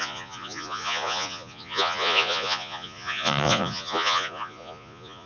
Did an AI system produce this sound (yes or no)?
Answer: yes